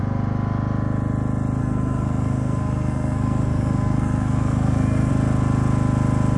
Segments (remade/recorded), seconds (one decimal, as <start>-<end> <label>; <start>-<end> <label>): 0.0-1.6 recorded; 1.6-5.1 remade; 5.1-6.4 recorded